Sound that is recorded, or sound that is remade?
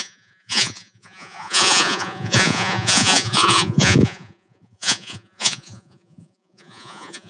remade